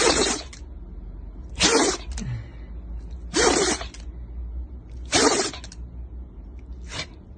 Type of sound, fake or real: real